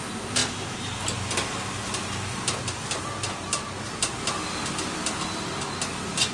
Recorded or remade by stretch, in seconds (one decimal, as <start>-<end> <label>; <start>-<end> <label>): 0.0-6.3 recorded